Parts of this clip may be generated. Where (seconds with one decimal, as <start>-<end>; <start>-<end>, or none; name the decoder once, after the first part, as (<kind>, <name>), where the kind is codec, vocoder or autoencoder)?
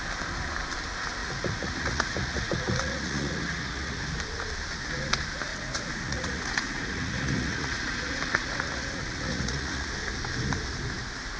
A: 1.2-4.0 (vocoder, Vocos); 5.5-9.9